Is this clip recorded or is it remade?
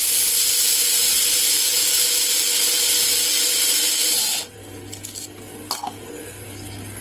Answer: recorded